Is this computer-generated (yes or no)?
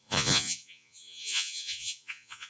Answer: yes